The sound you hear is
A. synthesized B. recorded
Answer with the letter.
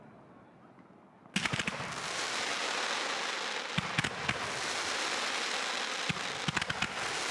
B